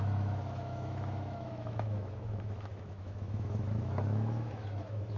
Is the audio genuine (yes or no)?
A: no